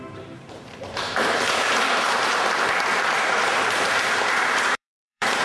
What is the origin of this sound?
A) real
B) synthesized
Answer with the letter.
B